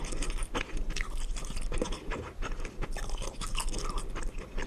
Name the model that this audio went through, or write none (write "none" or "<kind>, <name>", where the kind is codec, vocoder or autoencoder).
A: none